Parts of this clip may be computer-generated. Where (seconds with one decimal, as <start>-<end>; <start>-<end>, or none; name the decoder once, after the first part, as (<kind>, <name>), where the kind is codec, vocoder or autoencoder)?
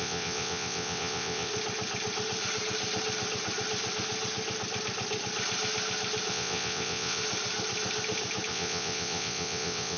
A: 0.0-1.5 (vocoder, WaveNeXt); 6.3-7.2; 8.5-10.0